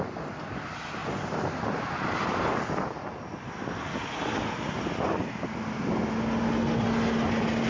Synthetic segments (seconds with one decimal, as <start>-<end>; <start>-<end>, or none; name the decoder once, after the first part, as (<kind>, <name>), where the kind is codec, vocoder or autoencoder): 1.0-2.5 (vocoder, BigVGAN v2)